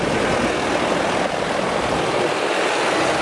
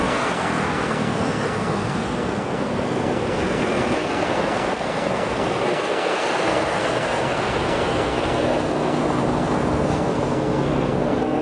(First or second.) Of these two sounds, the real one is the first